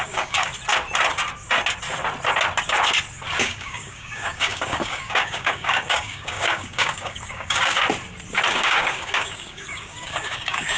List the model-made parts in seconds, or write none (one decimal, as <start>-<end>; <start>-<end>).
0.0-0.5; 3.4-7.8; 8.5-10.8